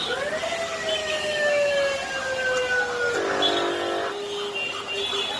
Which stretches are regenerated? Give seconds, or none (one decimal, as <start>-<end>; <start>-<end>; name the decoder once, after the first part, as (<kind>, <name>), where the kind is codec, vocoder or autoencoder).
1.0-1.7 (autoencoder, DAC-VAE)

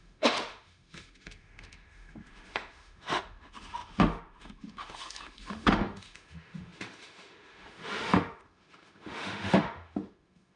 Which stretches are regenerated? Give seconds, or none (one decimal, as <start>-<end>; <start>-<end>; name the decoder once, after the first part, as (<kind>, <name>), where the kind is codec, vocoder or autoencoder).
0.0-10.6 (autoencoder, DAC-VAE)